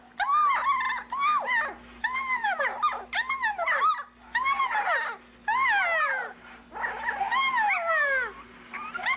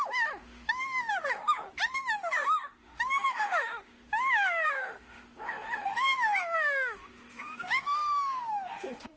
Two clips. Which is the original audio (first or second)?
first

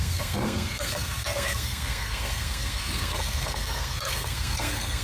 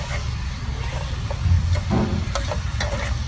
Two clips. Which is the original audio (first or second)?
second